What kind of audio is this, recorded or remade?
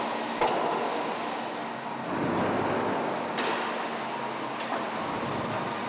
recorded